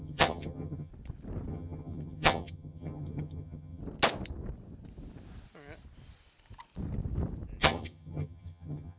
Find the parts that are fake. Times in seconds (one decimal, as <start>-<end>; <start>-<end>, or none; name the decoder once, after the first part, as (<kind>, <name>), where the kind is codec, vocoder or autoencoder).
0.0-0.9 (vocoder, HiFi-GAN); 1.5-3.8; 7.6-9.0